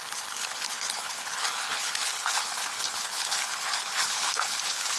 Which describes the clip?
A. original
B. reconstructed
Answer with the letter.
B